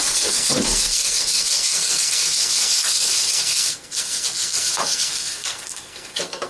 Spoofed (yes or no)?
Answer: yes